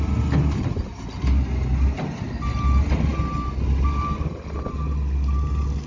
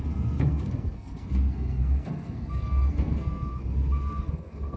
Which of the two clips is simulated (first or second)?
second